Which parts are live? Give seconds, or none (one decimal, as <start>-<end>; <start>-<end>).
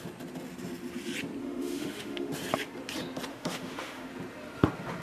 0.0-1.4; 2.3-3.3; 4.1-5.0